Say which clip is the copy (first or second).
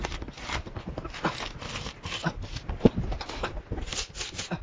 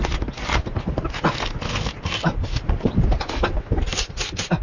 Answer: first